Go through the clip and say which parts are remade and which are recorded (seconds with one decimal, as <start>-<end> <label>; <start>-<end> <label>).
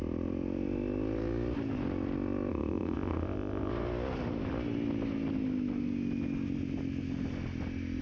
0.0-2.5 recorded; 2.5-3.7 remade; 3.7-8.0 recorded